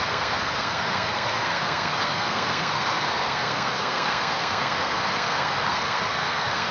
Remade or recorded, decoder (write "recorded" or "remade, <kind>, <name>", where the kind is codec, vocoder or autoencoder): remade, codec, SNAC